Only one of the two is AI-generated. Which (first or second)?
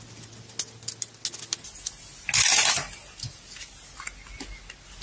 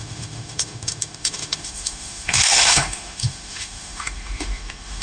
second